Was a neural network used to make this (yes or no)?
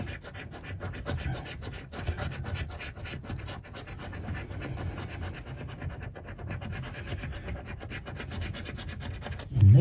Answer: no